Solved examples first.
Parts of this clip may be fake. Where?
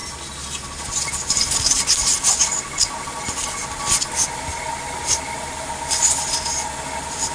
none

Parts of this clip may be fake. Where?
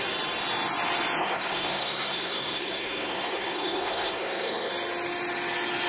1.2-4.7 (codec, SNAC)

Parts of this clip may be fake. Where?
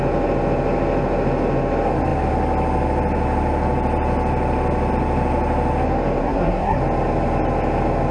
6.2-6.8 (codec, SNAC)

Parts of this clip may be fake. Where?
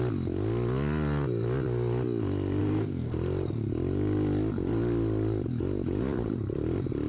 2.6-3.1 (codec, SNAC)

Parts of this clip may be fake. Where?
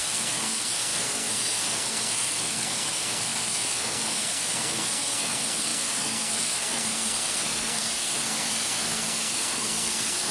0.0-10.3 (codec, SNAC)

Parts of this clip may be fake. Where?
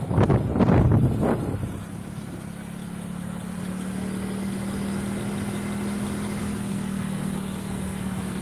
6.4-8.4 (codec, SNAC)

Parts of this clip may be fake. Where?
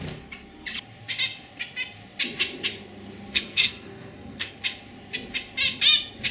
3.3-4.6 (codec, SNAC)